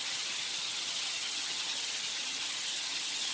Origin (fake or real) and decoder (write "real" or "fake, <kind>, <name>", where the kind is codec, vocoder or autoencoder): fake, vocoder, HiFi-GAN